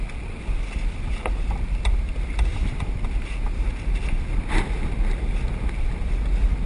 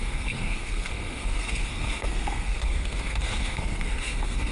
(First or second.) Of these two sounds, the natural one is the first